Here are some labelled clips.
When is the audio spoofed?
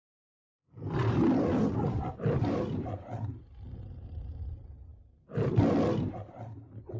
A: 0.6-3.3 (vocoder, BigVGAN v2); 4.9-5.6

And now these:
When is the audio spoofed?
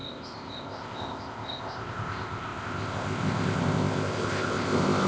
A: 0.0-5.1 (codec, ZipCodec)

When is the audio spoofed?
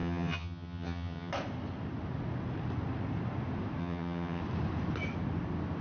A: 0.0-1.3 (vocoder, HiFi-GAN); 3.8-4.4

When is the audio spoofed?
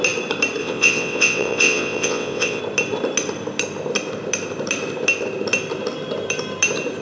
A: 0.6-2.6 (vocoder, WaveNeXt)